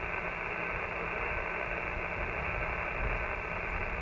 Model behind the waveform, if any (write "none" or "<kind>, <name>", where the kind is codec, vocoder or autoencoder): none